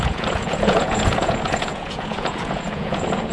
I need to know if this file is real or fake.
fake